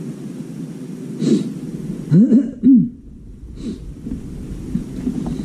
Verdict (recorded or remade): recorded